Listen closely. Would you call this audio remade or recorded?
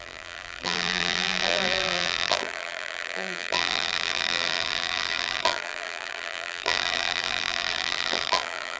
remade